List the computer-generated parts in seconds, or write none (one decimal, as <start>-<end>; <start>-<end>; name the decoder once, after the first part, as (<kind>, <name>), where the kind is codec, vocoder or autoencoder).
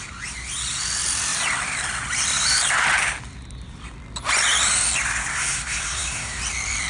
5.3-6.4 (codec, SNAC)